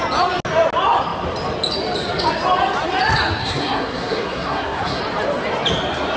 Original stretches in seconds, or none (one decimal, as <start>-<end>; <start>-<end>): 0.0-3.4; 5.0-6.2